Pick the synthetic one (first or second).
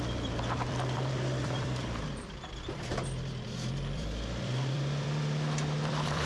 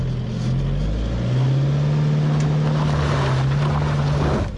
first